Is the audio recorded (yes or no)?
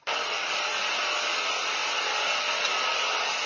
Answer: yes